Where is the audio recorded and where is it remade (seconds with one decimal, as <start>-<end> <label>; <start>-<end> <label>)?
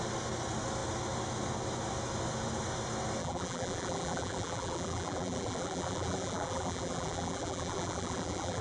0.0-3.2 recorded; 3.2-8.6 remade